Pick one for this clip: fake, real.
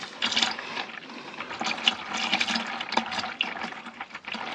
real